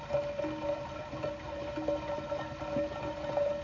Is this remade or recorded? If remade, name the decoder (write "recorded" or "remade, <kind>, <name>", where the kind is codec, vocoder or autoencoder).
recorded